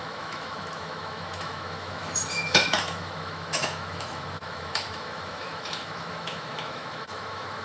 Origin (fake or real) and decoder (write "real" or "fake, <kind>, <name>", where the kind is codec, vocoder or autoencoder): fake, autoencoder, DAC-VAE